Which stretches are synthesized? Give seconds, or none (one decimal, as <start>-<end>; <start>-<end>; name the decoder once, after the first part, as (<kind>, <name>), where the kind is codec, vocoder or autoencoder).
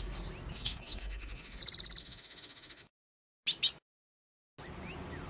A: 0.5-1.6 (autoencoder, DAC-VAE); 2.0-2.9